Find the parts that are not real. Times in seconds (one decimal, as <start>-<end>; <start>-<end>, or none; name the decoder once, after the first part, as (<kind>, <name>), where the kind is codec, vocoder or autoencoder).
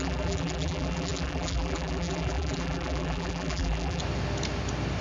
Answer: 0.0-4.0 (vocoder, BigVGAN v2)